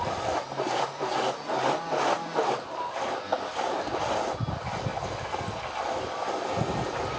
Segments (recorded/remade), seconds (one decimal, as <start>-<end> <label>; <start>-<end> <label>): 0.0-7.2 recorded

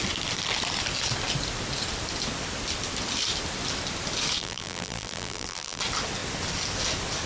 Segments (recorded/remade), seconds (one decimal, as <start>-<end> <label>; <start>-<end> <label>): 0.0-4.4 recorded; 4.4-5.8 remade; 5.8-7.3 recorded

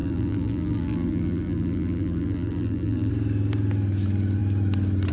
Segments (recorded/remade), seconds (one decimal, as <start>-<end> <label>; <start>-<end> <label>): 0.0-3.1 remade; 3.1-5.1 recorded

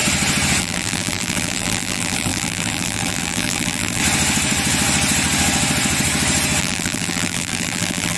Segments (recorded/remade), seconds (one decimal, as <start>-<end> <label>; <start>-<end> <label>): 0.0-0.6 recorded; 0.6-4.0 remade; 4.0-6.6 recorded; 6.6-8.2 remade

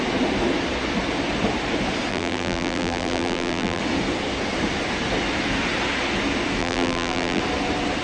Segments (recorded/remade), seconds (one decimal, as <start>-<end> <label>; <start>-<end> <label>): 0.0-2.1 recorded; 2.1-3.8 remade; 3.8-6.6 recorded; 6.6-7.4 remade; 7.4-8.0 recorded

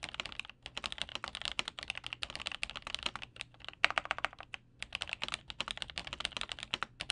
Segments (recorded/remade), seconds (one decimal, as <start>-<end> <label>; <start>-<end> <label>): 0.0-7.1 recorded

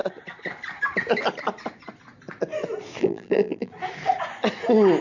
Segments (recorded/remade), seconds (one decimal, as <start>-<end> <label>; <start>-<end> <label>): 0.0-3.0 recorded; 3.0-3.7 remade; 3.7-5.0 recorded